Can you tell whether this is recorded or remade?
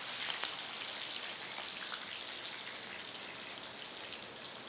recorded